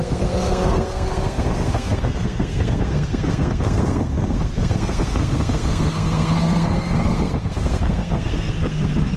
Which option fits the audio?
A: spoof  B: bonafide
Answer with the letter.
A